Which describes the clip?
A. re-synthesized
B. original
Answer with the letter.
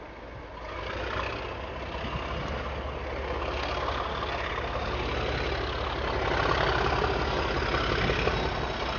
B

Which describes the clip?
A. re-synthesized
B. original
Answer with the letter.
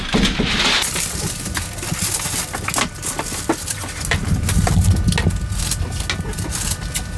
B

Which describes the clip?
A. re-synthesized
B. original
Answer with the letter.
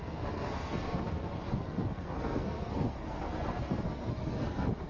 A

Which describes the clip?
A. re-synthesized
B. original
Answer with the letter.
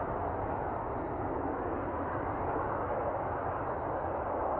B